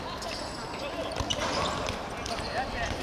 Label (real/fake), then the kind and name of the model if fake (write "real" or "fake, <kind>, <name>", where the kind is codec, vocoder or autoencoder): real